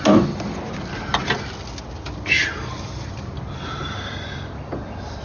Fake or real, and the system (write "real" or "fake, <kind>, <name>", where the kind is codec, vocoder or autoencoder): real